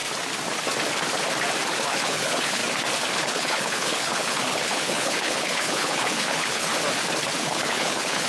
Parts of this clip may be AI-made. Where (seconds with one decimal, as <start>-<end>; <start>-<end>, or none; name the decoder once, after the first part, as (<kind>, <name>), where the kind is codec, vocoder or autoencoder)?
1.9-2.6 (codec, HILCodec); 3.1-6.7; 7.4-8.3